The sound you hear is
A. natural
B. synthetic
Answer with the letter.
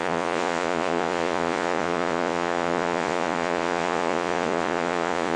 B